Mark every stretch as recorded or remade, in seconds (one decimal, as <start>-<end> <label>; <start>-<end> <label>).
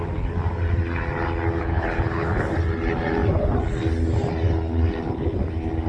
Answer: 0.0-1.6 recorded; 1.6-2.5 remade; 2.5-5.9 recorded